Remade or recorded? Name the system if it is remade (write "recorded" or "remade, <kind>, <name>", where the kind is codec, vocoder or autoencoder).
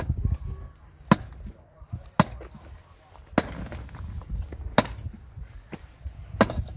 recorded